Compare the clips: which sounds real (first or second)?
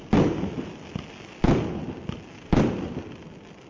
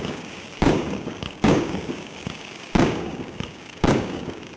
first